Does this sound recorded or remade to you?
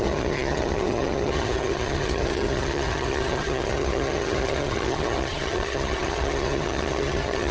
remade